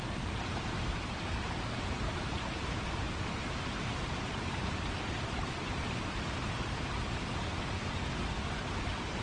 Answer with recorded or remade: remade